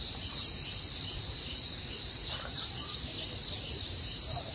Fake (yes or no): yes